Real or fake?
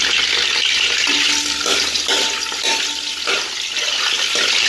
real